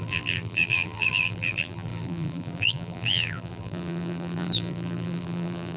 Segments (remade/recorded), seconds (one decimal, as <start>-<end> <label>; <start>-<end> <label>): 0.0-5.8 remade